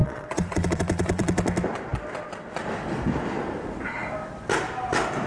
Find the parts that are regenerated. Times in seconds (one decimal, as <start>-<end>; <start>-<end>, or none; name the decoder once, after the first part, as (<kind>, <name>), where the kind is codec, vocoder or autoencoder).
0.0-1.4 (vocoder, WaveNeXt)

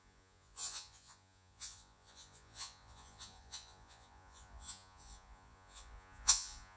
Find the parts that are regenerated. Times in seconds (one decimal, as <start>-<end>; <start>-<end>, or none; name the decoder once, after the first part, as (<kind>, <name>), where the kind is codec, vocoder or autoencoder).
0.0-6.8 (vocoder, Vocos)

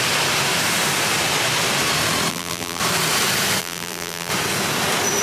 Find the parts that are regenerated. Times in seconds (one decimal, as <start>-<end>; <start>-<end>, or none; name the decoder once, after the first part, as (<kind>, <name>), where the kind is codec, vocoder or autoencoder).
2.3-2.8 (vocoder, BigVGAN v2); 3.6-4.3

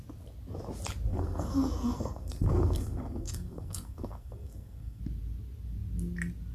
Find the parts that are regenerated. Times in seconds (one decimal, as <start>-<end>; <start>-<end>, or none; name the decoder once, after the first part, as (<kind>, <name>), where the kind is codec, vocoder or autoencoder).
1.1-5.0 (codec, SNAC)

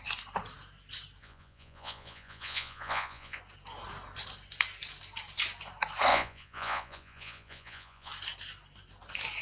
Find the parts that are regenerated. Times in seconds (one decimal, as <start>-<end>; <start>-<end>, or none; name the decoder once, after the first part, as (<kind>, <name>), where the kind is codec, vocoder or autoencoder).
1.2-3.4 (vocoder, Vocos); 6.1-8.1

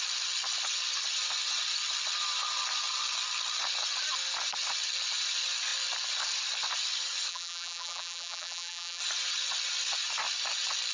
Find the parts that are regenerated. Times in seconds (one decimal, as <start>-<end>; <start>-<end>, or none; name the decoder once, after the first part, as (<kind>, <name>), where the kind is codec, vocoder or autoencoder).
7.3-9.0 (vocoder, BigVGAN v2)